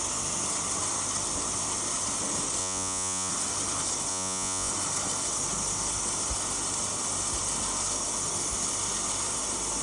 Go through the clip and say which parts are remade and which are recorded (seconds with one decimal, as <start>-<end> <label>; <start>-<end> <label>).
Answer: 0.0-2.6 recorded; 2.6-3.3 remade; 3.3-4.1 recorded; 4.1-4.7 remade; 4.7-9.8 recorded